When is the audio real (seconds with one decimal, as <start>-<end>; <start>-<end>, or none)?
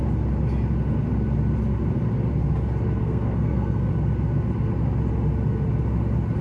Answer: 0.0-3.0; 3.9-6.4